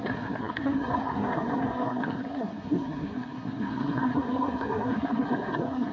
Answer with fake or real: fake